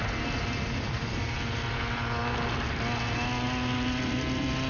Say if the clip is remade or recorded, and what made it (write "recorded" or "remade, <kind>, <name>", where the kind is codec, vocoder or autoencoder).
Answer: recorded